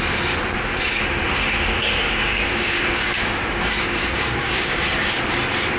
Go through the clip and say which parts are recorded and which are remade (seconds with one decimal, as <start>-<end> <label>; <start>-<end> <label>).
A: 0.0-1.8 recorded; 1.8-5.3 remade; 5.3-5.8 recorded

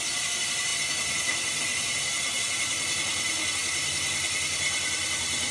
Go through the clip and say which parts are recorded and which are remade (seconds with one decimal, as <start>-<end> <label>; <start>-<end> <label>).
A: 0.0-5.5 recorded

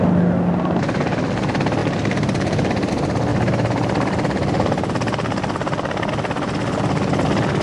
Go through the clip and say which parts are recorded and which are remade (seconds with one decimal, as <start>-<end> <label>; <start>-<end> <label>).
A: 0.0-1.8 recorded; 1.8-2.9 remade; 2.9-7.6 recorded

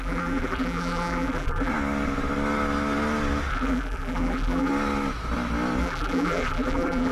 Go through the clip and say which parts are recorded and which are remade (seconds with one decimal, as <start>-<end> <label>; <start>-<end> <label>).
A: 0.0-1.7 remade; 1.7-3.5 recorded; 3.5-4.7 remade; 4.7-5.8 recorded; 5.8-7.1 remade

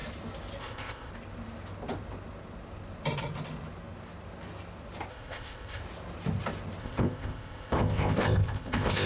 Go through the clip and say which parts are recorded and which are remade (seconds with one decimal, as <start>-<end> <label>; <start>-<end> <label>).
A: 0.0-0.6 recorded; 0.6-1.1 remade; 1.1-5.1 recorded; 5.1-5.8 remade; 5.8-6.8 recorded; 6.8-9.1 remade

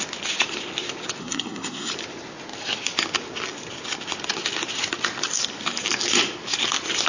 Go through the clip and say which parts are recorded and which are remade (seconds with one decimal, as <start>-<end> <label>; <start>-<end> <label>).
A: 0.0-1.2 recorded; 1.2-1.9 remade; 1.9-7.1 recorded